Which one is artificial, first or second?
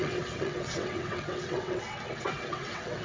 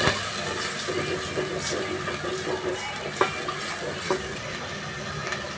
first